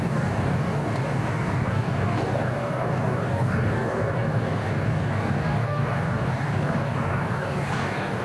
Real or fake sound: fake